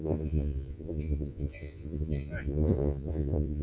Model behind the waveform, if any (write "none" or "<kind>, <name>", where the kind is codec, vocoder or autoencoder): vocoder, Vocos